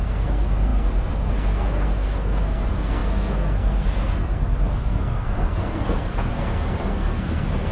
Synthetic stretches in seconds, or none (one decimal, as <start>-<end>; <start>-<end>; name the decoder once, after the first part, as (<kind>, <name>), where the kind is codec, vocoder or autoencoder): 0.0-7.7 (codec, SNAC)

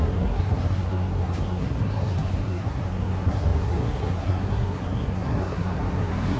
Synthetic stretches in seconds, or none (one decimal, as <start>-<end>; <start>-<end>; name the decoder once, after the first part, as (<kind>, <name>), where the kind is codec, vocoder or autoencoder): 0.0-6.4 (codec, SNAC)

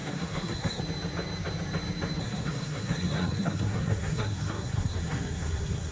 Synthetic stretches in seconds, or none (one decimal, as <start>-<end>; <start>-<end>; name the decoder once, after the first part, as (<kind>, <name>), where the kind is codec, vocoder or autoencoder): 0.0-0.8 (codec, SNAC); 2.2-5.9